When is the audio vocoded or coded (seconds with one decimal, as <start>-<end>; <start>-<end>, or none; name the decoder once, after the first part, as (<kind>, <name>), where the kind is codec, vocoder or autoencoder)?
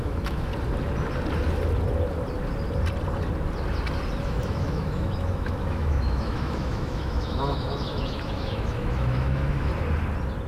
0.0-0.5 (autoencoder, DAC-VAE); 4.2-9.7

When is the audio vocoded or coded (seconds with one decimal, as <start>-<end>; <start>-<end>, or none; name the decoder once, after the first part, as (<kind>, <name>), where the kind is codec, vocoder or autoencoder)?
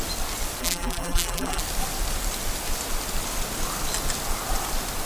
0.6-1.6 (vocoder, BigVGAN v2)